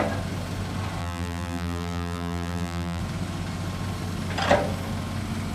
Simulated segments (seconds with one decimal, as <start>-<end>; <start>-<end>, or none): 1.0-3.0